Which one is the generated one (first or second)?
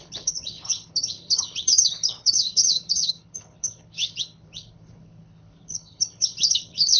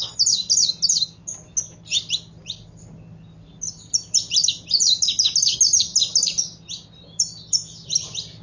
first